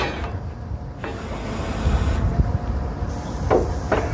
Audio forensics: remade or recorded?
recorded